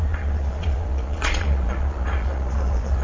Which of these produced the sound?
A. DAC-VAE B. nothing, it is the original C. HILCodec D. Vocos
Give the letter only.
D